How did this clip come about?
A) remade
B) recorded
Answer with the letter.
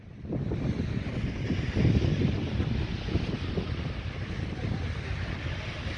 B